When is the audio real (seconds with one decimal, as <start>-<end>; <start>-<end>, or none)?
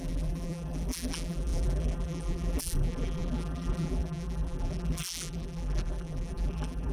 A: none